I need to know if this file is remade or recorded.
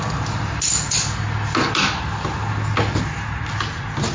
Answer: recorded